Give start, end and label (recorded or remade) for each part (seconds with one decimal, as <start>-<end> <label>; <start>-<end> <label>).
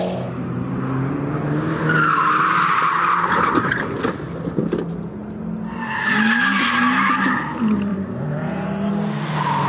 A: 0.0-7.9 recorded; 7.9-8.9 remade; 8.9-9.7 recorded